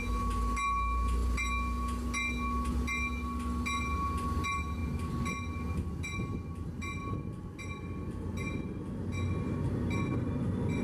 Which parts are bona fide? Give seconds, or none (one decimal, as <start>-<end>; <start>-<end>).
0.0-10.8